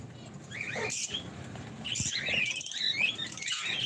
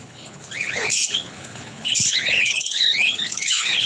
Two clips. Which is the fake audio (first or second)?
second